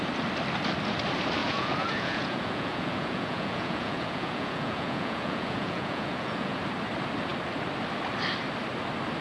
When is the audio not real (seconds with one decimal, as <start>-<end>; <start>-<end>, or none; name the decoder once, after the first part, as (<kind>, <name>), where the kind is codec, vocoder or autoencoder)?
1.4-6.6 (vocoder, Vocos)